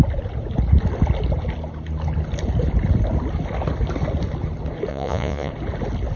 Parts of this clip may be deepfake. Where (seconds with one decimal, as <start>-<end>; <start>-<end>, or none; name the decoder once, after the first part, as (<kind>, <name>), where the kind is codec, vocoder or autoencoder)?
4.9-5.5 (vocoder, Vocos)